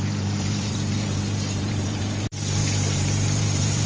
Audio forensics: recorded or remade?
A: remade